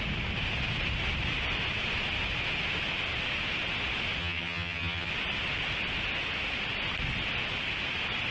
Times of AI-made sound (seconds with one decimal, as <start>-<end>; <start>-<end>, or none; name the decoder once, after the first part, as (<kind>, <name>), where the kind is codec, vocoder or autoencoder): 4.2-5.1 (vocoder, HiFi-GAN)